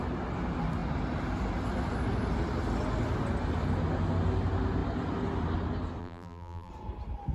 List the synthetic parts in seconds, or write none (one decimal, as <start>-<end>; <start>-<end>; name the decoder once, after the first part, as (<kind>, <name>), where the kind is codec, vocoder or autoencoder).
6.0-6.7 (vocoder, BigVGAN v2)